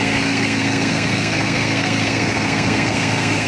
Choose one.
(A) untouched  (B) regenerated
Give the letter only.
B